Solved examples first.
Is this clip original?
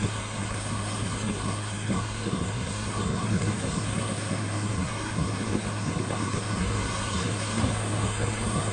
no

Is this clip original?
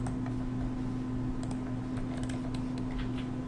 yes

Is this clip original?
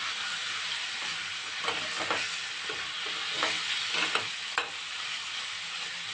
yes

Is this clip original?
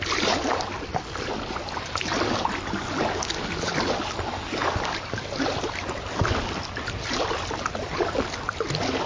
yes